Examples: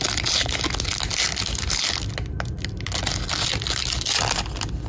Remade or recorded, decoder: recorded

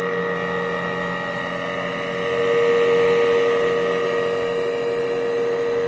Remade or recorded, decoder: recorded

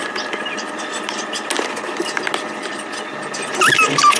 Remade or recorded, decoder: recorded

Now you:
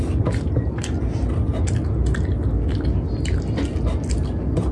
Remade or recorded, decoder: recorded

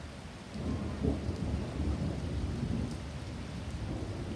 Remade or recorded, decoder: recorded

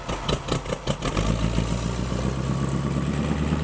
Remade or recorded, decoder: recorded